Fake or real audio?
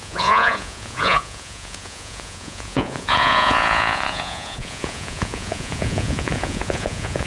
fake